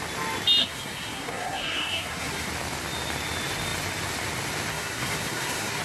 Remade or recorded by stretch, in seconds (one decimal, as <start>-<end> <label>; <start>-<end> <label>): 0.0-0.6 recorded; 0.6-2.5 remade; 2.5-4.7 recorded; 4.7-5.8 remade